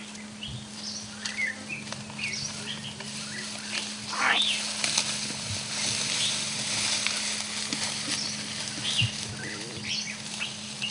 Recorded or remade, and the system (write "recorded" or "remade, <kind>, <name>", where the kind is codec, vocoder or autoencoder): recorded